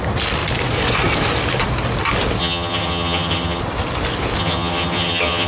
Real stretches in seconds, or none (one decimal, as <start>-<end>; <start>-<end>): 0.0-2.4; 3.6-4.4

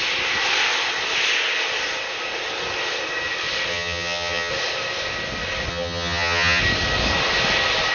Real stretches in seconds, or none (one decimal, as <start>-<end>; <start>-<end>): 0.0-3.7; 4.5-5.7; 6.6-7.9

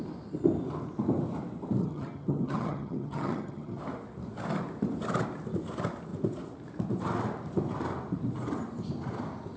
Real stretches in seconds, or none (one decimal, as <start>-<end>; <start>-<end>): 0.0-1.8; 3.8-9.6

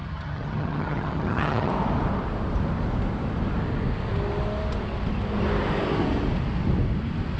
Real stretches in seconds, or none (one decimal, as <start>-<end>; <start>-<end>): 1.7-7.4

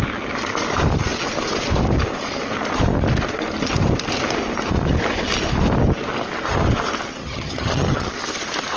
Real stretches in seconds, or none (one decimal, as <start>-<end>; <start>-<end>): 0.0-7.2; 8.1-8.8

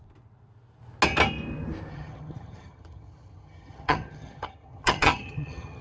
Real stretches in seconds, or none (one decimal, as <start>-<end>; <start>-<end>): 0.0-1.9

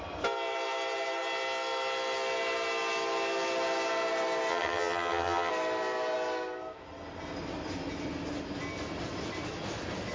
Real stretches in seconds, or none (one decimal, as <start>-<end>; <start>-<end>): 0.0-4.5; 5.5-10.1